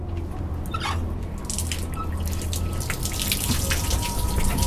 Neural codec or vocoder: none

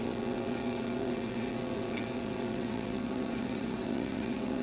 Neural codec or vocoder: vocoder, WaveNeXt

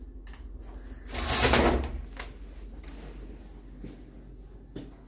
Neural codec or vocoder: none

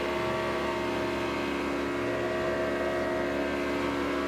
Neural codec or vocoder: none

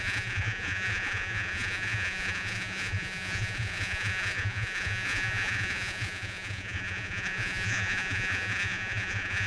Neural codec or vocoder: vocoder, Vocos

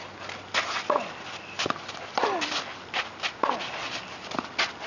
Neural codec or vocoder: none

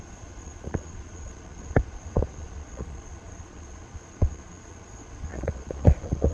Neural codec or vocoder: vocoder, Vocos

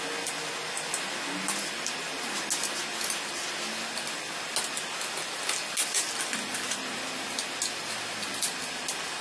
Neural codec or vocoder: none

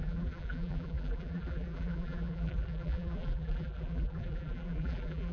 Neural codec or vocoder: vocoder, BigVGAN v2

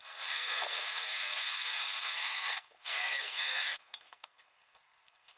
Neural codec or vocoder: codec, SNAC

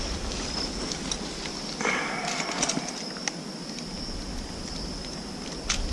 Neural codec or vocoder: none